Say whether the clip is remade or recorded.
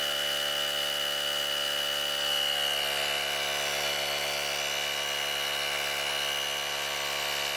recorded